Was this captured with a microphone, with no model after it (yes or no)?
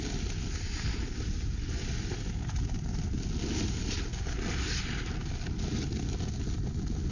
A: yes